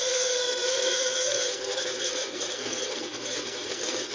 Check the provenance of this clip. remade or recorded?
remade